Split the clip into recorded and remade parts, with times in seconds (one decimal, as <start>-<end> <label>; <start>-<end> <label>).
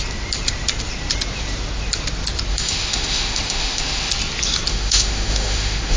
0.0-2.5 recorded; 2.5-4.1 remade; 4.1-4.7 recorded; 4.7-6.0 remade